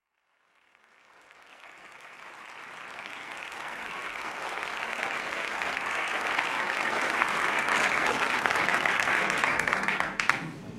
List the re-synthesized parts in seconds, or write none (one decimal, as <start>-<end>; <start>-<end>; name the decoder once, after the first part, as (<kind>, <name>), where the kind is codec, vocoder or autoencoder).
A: 0.0-2.2 (codec, SNAC); 2.9-10.8